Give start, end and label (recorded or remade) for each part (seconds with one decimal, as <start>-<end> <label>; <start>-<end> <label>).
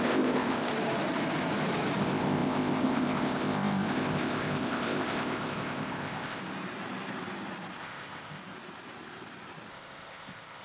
0.0-0.7 remade; 0.7-2.0 recorded; 2.0-6.4 remade; 6.4-7.8 recorded; 7.8-8.4 remade; 8.4-9.7 recorded; 9.7-10.6 remade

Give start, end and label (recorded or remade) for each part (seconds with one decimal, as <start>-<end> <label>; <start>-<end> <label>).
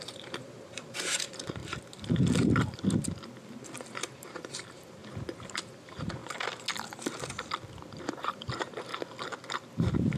0.0-1.6 remade; 1.6-3.8 recorded; 3.8-5.0 remade; 5.0-5.6 recorded; 5.6-6.2 remade; 6.2-8.2 recorded; 8.2-8.9 remade; 8.9-10.2 recorded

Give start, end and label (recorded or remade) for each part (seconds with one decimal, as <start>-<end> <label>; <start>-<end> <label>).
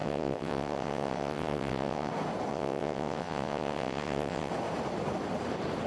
0.0-2.1 remade; 2.1-2.5 recorded; 2.5-4.5 remade; 4.5-5.9 recorded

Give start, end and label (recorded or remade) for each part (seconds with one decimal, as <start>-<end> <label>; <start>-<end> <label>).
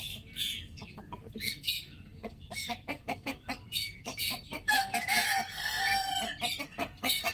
0.0-6.1 remade; 6.1-6.6 recorded; 6.6-7.3 remade